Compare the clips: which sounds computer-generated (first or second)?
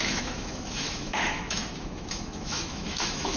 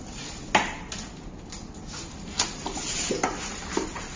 first